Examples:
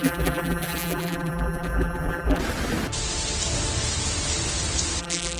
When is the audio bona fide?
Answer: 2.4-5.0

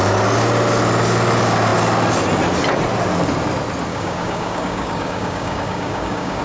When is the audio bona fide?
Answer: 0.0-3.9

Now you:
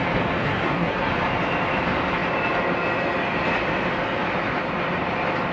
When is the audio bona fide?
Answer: 0.0-0.4; 1.1-5.5